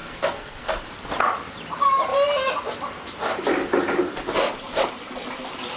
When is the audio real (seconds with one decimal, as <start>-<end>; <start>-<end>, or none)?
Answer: 0.8-5.8